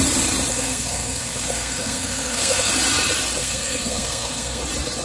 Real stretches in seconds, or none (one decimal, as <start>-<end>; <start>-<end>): 0.0-0.5; 2.7-3.4; 4.6-5.0